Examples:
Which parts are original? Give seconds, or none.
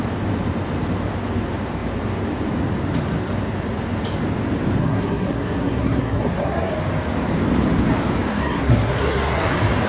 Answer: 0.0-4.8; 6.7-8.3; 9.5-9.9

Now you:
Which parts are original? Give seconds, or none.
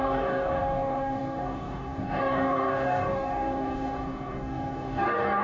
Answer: none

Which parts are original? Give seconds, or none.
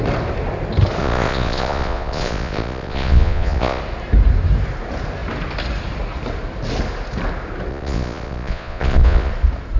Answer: 0.0-1.0; 3.8-7.7; 9.3-9.8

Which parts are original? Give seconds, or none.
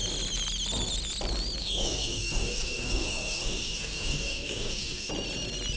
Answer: 0.0-1.6; 5.1-5.8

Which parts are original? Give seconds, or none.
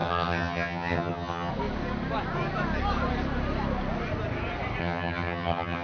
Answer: 1.5-4.8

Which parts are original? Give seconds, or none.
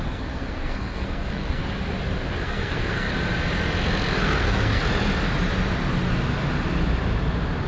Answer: 1.6-2.4; 3.1-4.2; 4.8-7.7